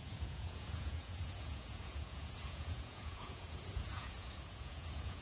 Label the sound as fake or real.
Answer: fake